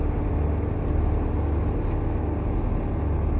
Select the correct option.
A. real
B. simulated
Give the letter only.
A